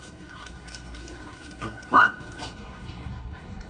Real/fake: fake